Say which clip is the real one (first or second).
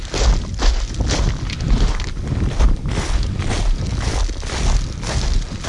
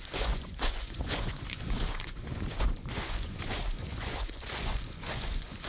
first